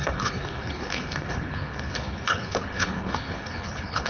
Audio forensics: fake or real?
fake